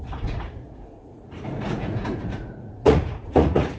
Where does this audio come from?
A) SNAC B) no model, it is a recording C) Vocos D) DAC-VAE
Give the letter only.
C